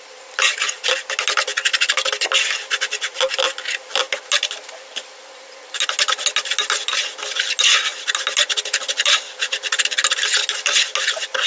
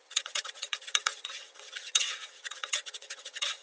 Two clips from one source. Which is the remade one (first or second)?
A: second